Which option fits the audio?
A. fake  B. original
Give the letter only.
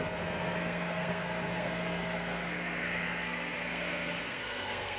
A